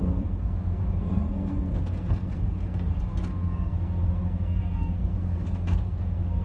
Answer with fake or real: fake